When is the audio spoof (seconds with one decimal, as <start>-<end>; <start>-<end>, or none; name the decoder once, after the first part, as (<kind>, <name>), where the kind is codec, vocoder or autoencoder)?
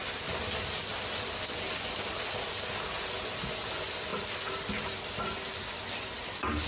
none